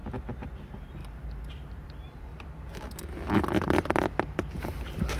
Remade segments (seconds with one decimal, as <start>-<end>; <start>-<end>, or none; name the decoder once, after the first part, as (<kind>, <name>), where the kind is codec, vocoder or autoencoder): 0.6-2.3 (vocoder, BigVGAN v2); 4.3-5.2